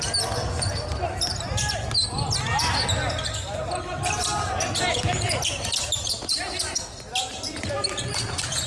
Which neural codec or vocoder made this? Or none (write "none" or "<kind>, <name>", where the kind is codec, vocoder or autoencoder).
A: none